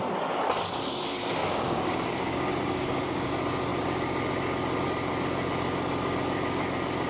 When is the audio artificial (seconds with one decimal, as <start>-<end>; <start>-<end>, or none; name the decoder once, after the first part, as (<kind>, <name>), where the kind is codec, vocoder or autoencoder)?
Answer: 1.4-3.3 (codec, DAC)